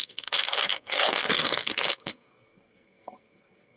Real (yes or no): no